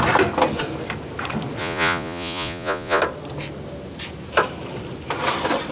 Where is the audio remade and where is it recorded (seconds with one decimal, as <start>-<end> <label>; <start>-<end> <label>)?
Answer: 0.0-1.6 recorded; 1.6-3.0 remade; 3.0-5.7 recorded